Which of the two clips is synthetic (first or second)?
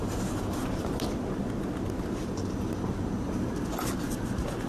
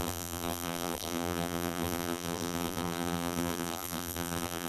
second